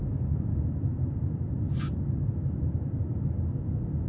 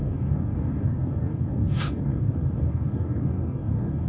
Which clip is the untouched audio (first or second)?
first